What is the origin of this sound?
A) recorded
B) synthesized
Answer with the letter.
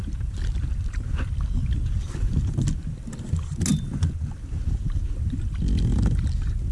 A